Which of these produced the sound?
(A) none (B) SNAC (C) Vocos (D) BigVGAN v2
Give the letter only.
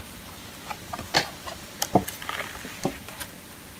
D